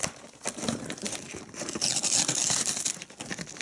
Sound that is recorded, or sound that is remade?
recorded